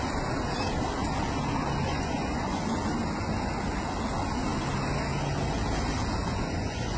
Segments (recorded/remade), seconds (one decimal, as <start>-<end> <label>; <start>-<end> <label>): 0.0-1.8 recorded; 1.8-2.6 remade; 2.6-6.2 recorded; 6.2-7.0 remade